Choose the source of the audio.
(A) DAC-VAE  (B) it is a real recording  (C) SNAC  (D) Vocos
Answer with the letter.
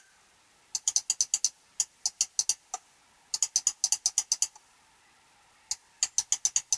B